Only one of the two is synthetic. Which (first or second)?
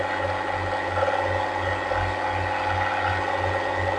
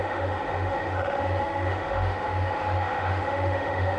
second